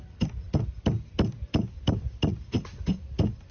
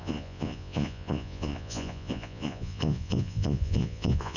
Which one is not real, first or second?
second